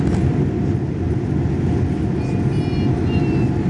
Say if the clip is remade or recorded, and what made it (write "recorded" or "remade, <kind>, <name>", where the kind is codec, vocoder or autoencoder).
recorded